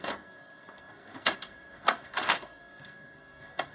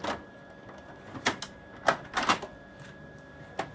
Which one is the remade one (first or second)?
first